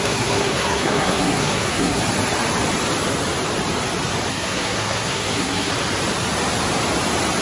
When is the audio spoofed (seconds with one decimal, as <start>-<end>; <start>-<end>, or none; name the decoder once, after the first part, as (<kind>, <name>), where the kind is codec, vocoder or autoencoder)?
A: 0.0-2.0 (codec, SNAC); 4.3-5.7